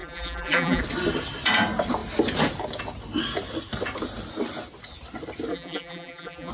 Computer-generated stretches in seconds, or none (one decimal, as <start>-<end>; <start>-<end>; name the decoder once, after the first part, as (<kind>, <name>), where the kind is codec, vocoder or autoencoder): 0.0-0.8 (vocoder, BigVGAN v2); 5.5-6.5